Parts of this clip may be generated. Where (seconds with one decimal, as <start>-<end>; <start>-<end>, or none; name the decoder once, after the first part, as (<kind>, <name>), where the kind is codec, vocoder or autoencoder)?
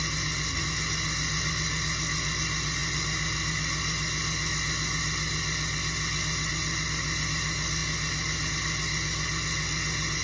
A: none